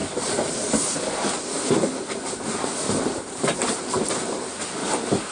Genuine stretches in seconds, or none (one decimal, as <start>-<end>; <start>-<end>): 0.0-5.3